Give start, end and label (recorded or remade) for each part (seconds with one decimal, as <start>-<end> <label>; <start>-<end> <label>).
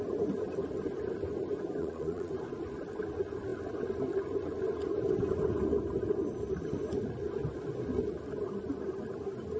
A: 0.0-1.8 recorded; 1.8-2.3 remade; 2.3-9.6 recorded